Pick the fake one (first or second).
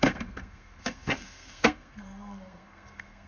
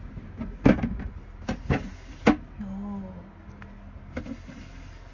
first